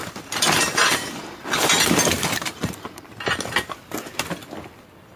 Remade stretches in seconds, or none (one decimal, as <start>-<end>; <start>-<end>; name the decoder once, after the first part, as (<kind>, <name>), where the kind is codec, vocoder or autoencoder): 0.0-3.0 (vocoder, BigVGAN v2)